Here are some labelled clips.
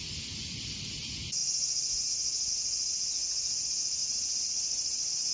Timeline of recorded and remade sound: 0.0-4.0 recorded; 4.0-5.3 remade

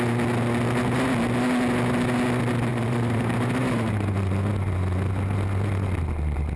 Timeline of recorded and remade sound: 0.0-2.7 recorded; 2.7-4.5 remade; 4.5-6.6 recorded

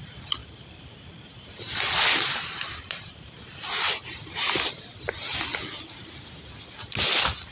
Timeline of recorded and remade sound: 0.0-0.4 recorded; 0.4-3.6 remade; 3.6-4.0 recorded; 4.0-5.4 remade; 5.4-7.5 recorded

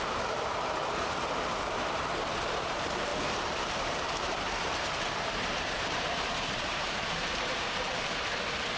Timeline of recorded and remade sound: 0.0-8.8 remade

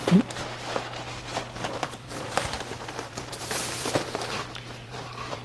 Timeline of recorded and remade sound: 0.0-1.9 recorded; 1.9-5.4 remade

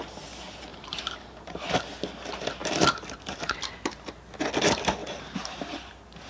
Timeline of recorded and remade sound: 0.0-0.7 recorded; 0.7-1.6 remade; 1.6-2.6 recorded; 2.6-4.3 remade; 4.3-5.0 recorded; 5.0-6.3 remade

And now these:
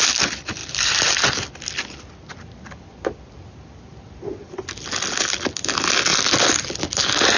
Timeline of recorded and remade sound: 0.0-0.6 recorded; 0.6-2.3 remade; 2.3-7.4 recorded